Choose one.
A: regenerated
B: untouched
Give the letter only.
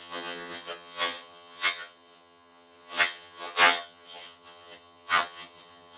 A